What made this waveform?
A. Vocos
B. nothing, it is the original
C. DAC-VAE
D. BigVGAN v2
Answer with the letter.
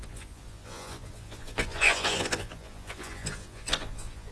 A